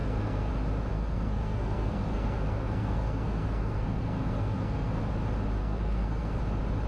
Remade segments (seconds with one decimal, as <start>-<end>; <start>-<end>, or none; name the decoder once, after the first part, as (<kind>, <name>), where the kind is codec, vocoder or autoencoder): 0.0-0.5 (codec, SNAC); 0.9-5.0; 5.6-6.4